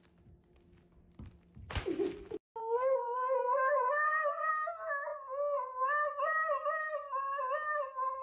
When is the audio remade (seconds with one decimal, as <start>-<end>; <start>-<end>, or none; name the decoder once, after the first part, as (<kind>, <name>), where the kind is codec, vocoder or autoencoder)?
2.6-4.5 (codec, SNAC)